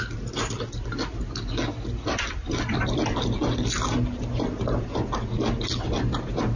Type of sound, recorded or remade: recorded